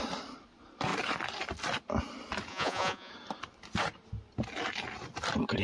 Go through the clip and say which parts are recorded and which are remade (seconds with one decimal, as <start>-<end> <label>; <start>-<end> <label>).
0.0-2.5 recorded; 2.5-3.1 remade; 3.1-5.6 recorded